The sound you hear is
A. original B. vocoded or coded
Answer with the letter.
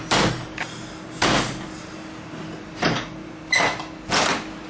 A